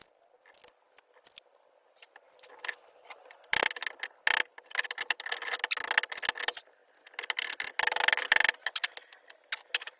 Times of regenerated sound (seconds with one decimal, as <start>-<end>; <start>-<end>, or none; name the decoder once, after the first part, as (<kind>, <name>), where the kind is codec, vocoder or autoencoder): none